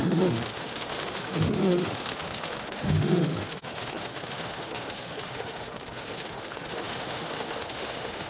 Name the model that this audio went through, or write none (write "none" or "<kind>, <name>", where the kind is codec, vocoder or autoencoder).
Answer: autoencoder, DAC-VAE